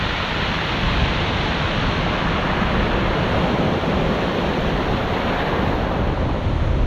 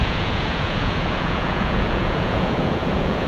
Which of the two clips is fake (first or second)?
second